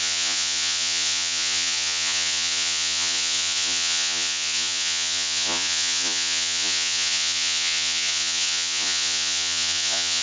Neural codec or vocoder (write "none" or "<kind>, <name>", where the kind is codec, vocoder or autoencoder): vocoder, Vocos